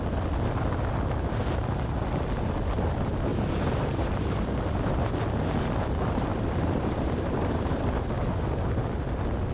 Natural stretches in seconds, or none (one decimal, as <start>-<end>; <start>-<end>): 0.0-3.3; 4.4-6.3; 7.9-9.5